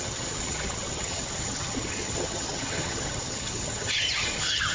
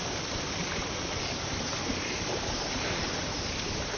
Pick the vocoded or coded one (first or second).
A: first